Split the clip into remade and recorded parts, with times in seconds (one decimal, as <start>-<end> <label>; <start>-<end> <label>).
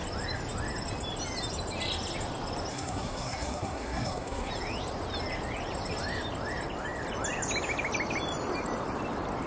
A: 0.0-2.7 recorded; 2.7-4.5 remade; 4.5-9.5 recorded